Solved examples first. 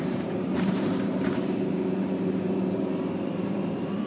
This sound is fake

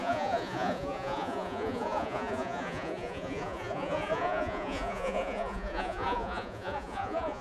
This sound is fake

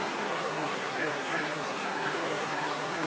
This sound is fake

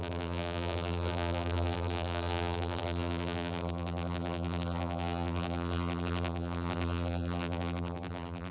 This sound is fake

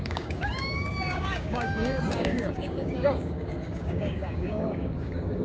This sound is fake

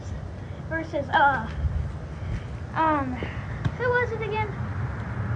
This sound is real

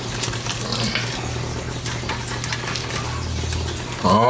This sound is real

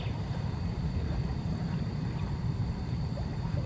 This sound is fake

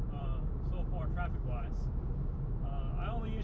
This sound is fake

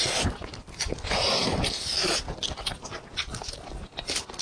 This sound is real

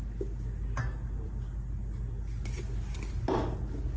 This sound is real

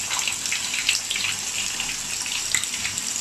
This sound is real